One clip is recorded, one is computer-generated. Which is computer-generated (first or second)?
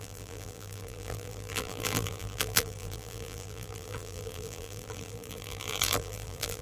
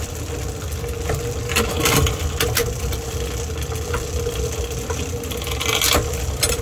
first